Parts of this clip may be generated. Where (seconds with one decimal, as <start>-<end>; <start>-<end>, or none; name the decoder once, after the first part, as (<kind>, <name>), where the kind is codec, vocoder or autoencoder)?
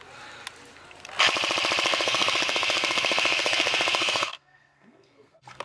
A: 1.9-5.6 (codec, SNAC)